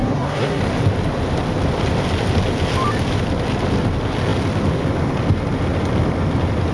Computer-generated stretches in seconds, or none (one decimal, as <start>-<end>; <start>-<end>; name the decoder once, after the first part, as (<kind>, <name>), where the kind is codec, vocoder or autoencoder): 0.0-0.6 (codec, SNAC)